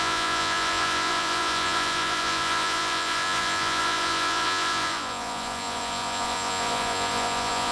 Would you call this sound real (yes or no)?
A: no